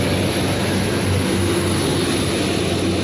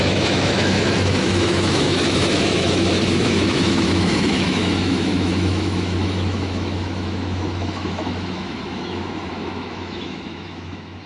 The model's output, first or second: second